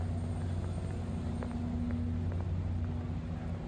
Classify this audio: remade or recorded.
recorded